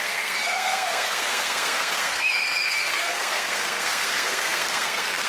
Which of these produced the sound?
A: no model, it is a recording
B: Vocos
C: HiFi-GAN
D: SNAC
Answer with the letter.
D